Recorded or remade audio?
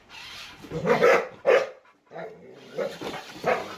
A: recorded